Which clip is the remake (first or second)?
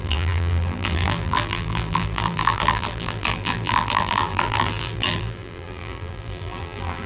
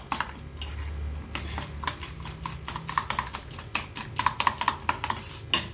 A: first